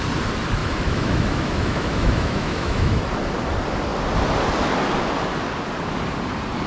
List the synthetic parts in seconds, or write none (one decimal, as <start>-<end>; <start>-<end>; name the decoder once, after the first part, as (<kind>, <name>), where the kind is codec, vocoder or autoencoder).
0.6-3.0 (autoencoder, DAC-VAE)